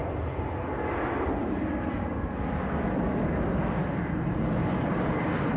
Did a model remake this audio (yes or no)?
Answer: no